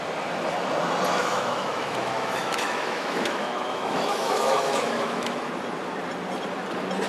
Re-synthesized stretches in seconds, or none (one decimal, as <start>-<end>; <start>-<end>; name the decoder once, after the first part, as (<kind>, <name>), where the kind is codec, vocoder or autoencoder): 1.2-5.5 (autoencoder, DAC-VAE)